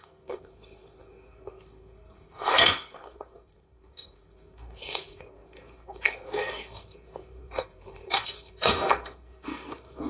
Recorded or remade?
remade